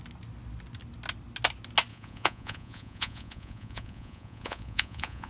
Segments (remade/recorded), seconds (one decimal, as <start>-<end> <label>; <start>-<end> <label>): 0.0-1.9 recorded; 1.9-5.3 remade